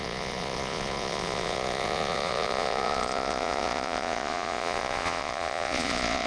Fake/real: fake